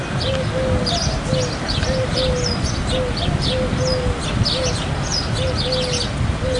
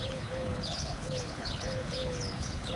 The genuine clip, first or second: first